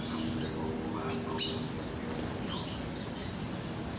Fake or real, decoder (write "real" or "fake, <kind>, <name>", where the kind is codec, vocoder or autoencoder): real